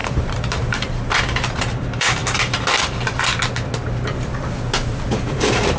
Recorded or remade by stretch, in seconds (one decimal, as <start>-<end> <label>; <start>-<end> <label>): 0.0-2.2 remade; 2.2-5.2 recorded; 5.2-5.8 remade